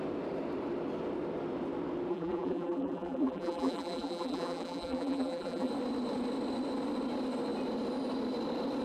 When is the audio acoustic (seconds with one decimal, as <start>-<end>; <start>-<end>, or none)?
0.0-2.1; 5.7-8.8